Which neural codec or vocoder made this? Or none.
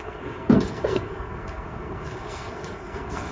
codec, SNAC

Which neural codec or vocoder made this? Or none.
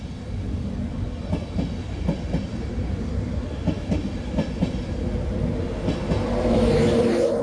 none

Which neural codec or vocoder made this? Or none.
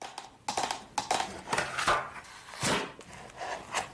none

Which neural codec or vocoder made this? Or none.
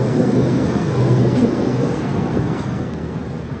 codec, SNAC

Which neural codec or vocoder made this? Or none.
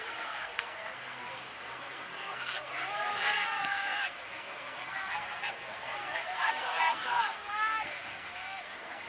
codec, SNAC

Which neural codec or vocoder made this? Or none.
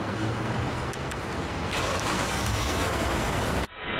codec, SNAC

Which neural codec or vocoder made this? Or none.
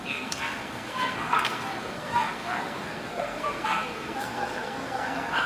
codec, SNAC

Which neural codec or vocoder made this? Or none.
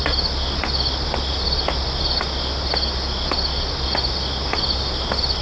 none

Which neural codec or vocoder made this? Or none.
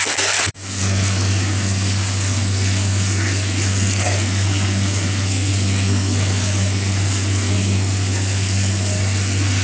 codec, SNAC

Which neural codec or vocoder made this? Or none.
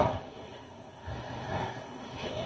codec, SNAC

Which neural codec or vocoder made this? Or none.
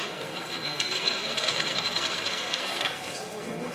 codec, SNAC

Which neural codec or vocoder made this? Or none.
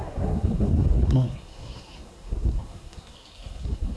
codec, SNAC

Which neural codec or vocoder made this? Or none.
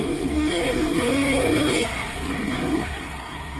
codec, SNAC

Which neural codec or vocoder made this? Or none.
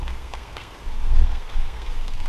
codec, SNAC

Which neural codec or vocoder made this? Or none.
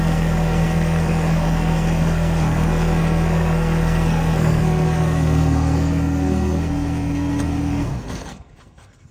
codec, SNAC